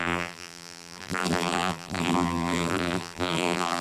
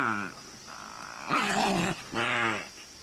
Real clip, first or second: second